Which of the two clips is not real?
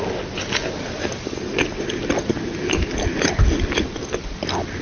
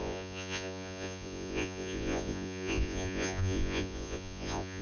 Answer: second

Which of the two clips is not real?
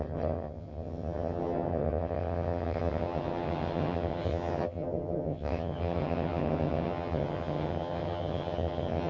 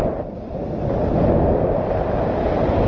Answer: first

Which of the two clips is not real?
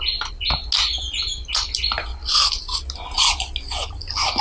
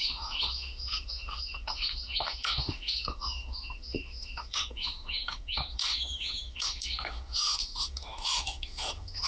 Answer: second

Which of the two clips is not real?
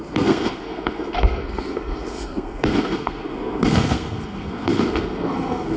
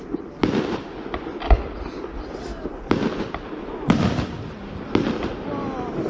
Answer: first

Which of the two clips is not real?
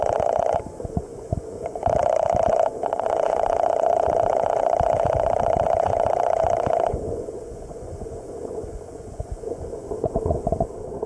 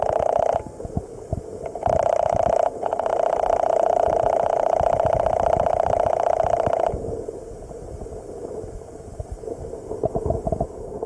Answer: first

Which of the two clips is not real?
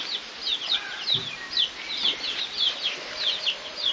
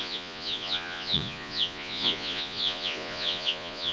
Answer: second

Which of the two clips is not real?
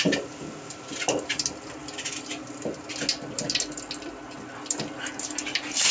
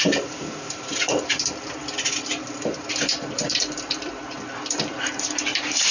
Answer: second